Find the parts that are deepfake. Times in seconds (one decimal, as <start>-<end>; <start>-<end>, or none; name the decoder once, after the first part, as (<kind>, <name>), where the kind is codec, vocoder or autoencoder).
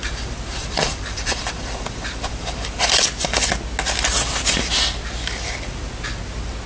0.0-3.0 (vocoder, BigVGAN v2)